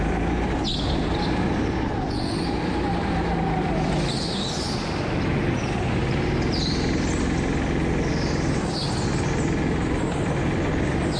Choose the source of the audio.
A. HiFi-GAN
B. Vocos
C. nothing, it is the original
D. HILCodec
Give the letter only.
C